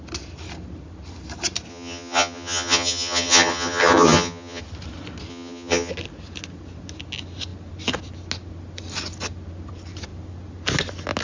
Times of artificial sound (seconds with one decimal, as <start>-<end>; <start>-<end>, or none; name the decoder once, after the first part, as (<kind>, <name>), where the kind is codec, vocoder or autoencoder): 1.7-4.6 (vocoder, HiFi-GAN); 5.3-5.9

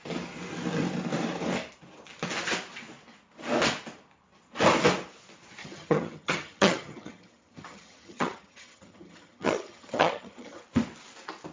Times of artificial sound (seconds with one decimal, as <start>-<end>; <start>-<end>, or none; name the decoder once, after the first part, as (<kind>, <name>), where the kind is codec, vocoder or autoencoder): 5.6-10.6 (vocoder, HiFi-GAN)

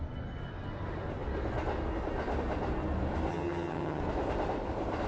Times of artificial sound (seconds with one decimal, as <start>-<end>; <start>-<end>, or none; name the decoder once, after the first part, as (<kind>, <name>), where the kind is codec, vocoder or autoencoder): 3.3-4.0 (vocoder, HiFi-GAN)

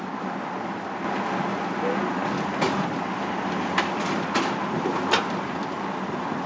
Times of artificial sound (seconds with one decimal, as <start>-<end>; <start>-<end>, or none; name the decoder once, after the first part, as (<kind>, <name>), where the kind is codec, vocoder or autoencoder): none

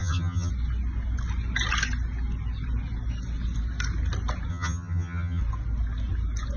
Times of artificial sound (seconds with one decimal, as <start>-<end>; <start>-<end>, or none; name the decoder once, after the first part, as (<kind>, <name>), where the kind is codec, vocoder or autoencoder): 0.0-0.5 (vocoder, HiFi-GAN); 4.5-5.4